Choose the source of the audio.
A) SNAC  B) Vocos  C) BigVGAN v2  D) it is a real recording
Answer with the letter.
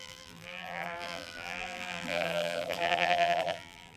C